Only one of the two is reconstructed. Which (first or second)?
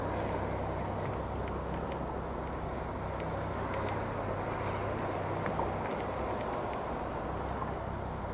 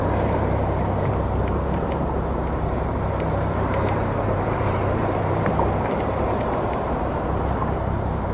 second